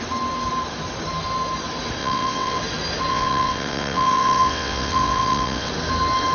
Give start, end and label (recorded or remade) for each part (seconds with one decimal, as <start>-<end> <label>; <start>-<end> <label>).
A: 0.0-2.0 recorded; 2.0-2.6 remade; 2.6-3.1 recorded; 3.1-5.7 remade; 5.7-6.3 recorded